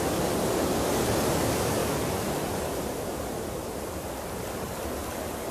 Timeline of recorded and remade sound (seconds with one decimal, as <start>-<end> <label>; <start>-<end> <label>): 0.0-1.8 recorded; 1.8-5.1 remade; 5.1-5.5 recorded